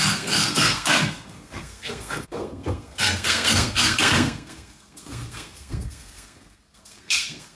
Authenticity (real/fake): fake